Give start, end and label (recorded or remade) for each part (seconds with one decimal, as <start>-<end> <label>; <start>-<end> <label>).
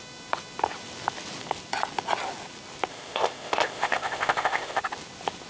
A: 0.0-2.9 recorded; 2.9-4.8 remade; 4.8-5.5 recorded